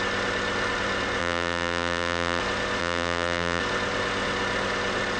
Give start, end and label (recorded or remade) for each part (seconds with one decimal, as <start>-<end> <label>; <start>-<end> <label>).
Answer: 0.0-1.2 recorded; 1.2-2.4 remade; 2.4-2.8 recorded; 2.8-3.6 remade; 3.6-5.2 recorded